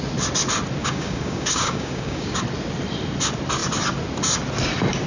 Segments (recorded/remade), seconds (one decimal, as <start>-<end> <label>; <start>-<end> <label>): 0.0-0.8 recorded; 0.8-2.4 remade; 2.4-5.1 recorded